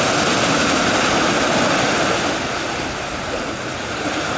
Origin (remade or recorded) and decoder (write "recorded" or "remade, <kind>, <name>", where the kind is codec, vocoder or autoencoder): recorded